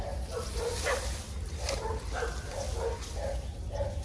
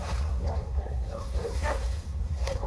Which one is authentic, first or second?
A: first